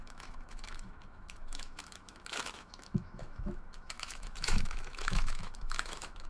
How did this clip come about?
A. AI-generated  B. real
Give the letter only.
A